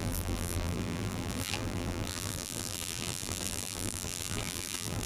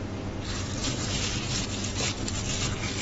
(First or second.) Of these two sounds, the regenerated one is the first